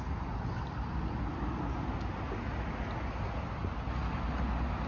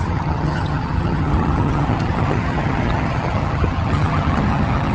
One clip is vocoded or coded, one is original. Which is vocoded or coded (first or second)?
second